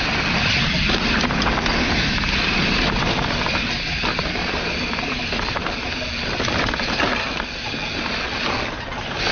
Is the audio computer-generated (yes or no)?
no